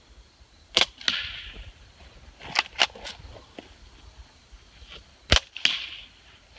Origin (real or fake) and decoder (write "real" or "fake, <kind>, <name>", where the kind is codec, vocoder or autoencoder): real